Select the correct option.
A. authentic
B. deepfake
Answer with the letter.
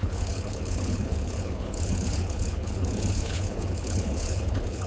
B